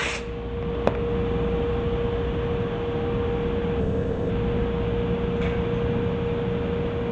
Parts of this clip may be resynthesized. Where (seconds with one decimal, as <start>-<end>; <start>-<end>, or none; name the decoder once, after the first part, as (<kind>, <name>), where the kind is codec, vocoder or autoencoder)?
3.8-4.3 (codec, ZipCodec)